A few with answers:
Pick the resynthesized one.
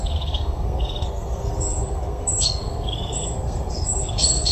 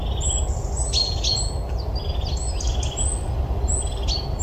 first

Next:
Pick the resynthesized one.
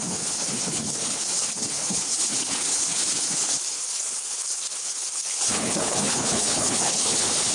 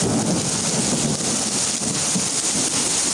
first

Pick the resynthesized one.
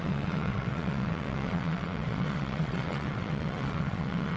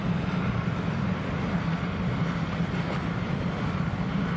first